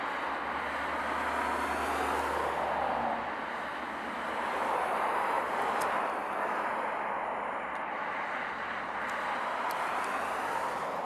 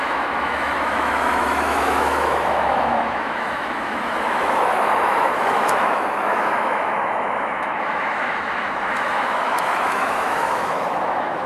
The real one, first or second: first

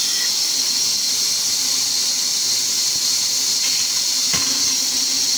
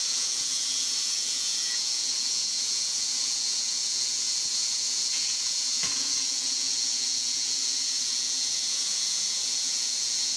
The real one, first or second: first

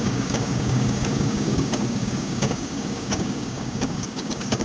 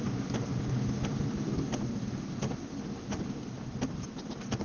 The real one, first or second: second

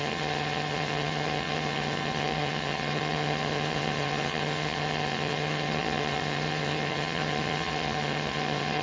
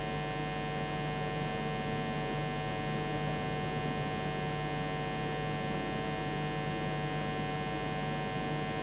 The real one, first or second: second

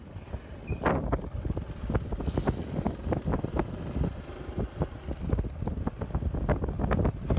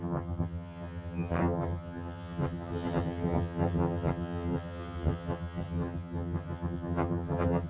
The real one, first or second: first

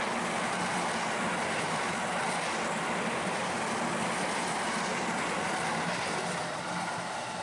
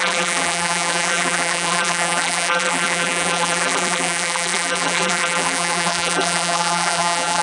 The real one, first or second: first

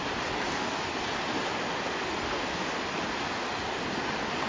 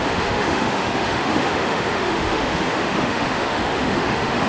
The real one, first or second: first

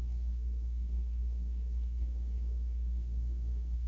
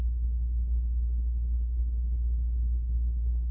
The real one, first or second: second